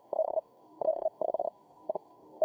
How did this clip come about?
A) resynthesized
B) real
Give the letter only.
A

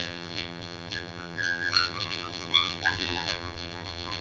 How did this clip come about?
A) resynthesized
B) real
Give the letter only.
A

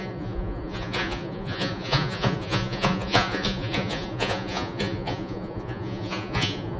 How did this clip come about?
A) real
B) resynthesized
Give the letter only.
B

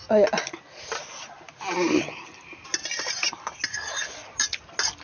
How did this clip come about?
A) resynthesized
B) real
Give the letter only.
B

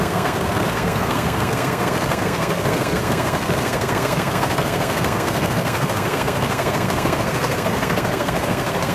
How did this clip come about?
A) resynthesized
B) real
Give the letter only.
A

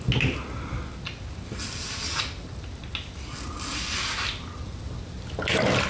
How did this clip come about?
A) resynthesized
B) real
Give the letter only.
B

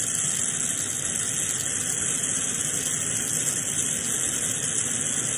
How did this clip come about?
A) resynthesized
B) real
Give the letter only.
B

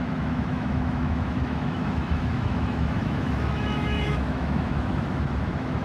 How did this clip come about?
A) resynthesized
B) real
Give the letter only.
A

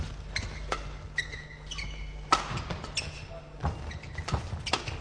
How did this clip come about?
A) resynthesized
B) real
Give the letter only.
B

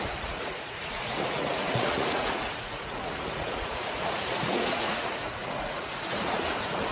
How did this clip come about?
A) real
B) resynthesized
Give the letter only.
B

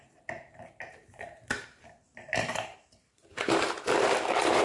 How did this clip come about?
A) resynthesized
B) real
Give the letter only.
A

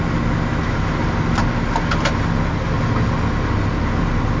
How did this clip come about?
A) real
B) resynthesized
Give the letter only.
A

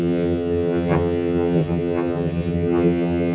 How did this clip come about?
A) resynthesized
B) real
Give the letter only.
A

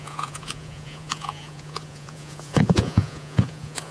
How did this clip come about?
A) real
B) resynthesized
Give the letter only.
B